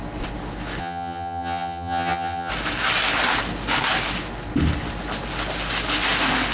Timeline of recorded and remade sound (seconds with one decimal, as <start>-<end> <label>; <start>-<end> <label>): 0.0-0.8 recorded; 0.8-2.5 remade; 2.5-6.5 recorded